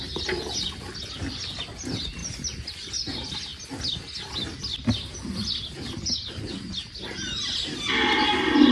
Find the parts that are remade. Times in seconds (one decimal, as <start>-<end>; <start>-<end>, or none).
none